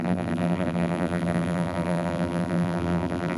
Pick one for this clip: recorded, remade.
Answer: remade